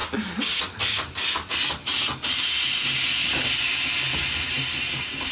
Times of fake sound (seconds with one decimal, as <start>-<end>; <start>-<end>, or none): none

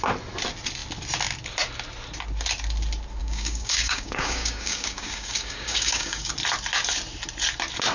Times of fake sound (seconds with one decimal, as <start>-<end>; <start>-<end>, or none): 3.2-6.3

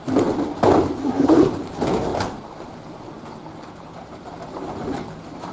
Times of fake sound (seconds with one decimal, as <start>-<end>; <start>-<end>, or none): 1.0-1.5

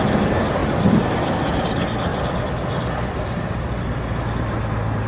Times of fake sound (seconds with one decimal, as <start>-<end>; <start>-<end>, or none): 0.6-1.4; 2.1-3.8

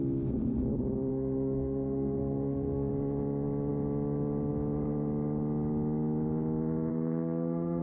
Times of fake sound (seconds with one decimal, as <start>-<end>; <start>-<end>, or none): 1.1-2.9; 6.9-7.8

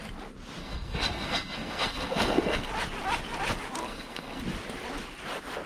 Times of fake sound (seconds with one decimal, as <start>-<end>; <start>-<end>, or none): 0.6-2.7; 3.8-4.4

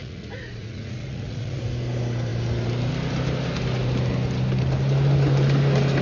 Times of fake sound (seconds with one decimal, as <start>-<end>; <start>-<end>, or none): 0.0-1.6